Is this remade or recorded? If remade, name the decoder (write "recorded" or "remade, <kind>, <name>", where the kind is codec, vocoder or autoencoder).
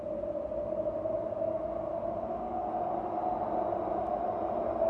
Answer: recorded